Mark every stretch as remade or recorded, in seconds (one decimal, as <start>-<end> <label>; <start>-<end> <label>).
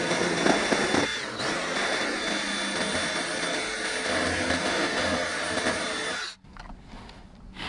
0.0-7.7 recorded